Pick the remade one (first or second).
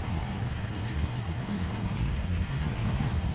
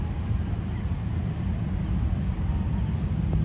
first